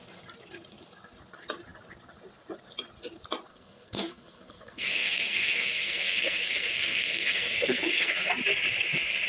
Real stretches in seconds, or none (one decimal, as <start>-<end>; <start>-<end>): 0.0-3.5; 8.3-9.3

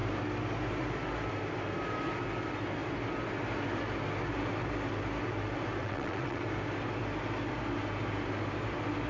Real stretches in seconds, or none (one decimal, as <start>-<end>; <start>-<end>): 0.0-5.8; 6.4-9.1

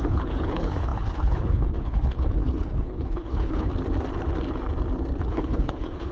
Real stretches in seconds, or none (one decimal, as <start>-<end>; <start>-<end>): 3.7-5.2

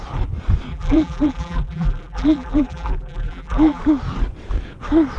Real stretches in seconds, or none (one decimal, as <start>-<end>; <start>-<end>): 0.0-0.7; 3.8-5.2

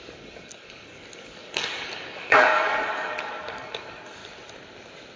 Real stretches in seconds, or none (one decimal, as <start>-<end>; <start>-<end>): 4.2-5.2

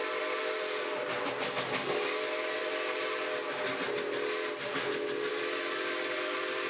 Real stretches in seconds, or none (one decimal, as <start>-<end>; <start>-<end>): 0.0-6.7

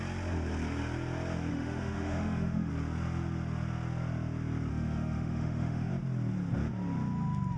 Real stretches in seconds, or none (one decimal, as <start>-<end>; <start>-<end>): 0.0-1.5; 2.7-4.7; 5.9-7.6